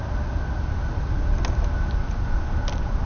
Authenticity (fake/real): real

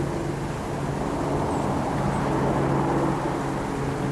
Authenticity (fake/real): real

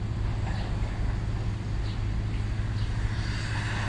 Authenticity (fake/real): real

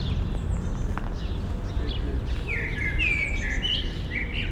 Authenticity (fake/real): real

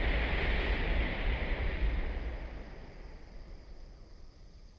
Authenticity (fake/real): fake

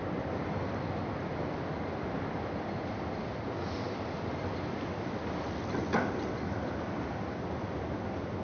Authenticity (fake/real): real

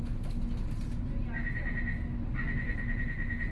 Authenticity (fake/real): real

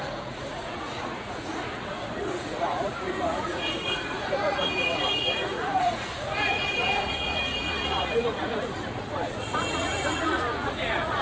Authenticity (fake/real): fake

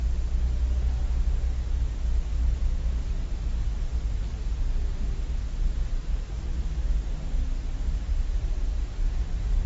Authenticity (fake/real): real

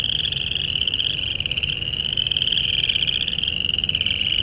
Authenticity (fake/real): real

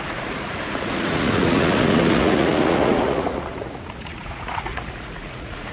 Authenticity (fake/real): fake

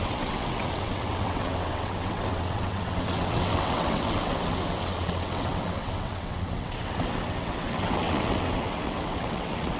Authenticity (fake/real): fake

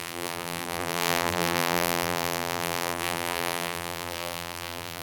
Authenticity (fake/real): fake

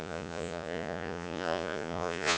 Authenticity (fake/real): fake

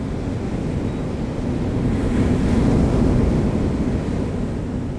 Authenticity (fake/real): real